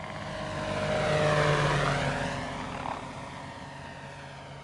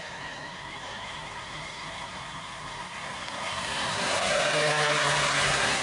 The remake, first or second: second